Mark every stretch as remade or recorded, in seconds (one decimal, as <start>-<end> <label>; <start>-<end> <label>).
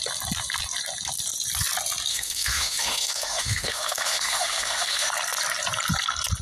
0.0-2.1 recorded; 2.1-5.1 remade; 5.1-6.4 recorded